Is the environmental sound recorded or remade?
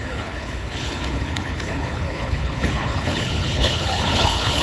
remade